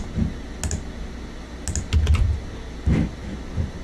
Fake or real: real